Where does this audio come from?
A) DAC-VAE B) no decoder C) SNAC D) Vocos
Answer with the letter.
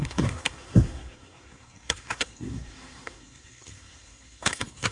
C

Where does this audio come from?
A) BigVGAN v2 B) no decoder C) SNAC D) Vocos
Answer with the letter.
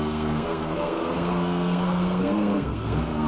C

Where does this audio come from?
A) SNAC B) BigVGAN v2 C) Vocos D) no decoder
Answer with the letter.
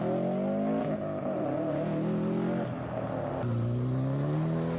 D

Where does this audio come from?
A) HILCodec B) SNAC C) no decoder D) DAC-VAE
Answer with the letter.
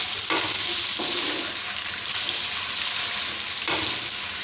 C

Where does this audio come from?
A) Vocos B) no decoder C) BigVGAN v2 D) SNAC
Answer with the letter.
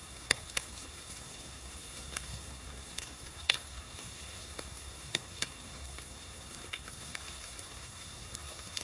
D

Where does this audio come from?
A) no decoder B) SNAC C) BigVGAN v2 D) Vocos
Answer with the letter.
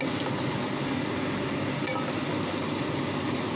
A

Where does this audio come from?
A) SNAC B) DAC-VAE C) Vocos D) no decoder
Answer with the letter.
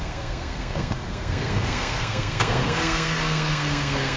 A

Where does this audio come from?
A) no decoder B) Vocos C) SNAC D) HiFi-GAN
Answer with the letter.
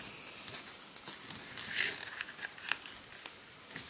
A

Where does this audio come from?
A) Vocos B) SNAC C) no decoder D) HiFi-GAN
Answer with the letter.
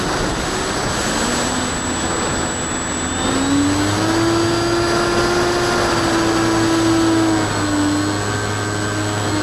C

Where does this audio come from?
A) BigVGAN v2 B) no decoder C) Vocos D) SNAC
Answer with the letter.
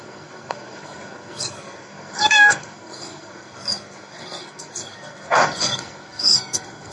D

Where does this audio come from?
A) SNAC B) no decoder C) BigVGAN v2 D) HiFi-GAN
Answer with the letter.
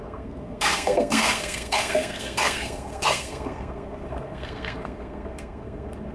A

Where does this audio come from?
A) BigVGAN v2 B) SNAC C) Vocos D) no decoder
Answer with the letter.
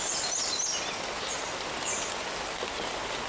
D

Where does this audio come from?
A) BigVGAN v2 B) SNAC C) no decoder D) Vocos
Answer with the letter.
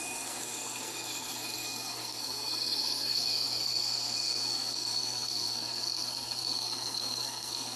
B